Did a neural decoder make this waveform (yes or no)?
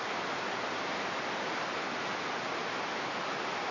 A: no